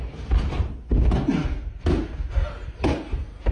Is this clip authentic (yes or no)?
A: yes